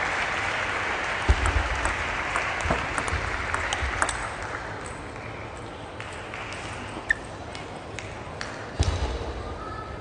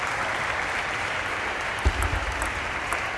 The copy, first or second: second